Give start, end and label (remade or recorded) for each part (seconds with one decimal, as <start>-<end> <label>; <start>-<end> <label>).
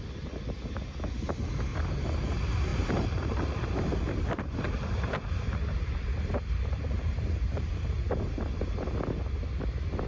0.0-1.7 recorded; 1.7-2.2 remade; 2.2-2.7 recorded; 2.7-7.9 remade; 7.9-10.1 recorded